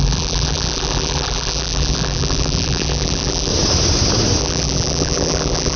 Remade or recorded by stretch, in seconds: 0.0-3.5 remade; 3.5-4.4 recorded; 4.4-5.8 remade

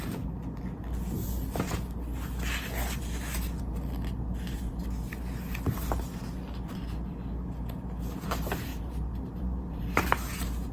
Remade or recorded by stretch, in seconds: 0.0-8.7 recorded; 8.7-10.0 remade; 10.0-10.7 recorded

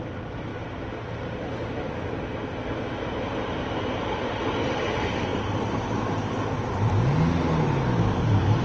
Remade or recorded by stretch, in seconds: 0.0-5.3 recorded; 5.3-5.9 remade; 5.9-8.6 recorded

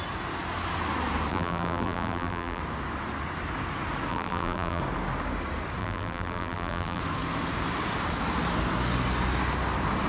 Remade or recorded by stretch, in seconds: 0.0-1.3 recorded; 1.3-2.6 remade; 2.6-4.1 recorded; 4.1-4.8 remade; 4.8-5.8 recorded; 5.8-7.0 remade; 7.0-10.1 recorded

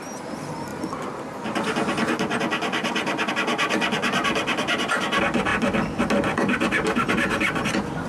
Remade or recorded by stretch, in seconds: 0.0-8.1 recorded

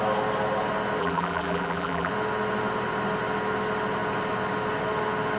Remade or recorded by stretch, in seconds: 0.0-1.0 recorded; 1.0-2.1 remade; 2.1-5.4 recorded